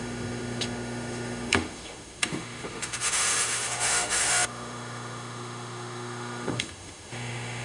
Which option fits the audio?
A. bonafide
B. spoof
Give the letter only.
B